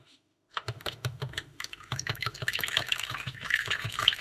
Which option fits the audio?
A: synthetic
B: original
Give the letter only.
A